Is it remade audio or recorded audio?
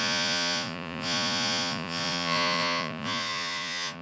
remade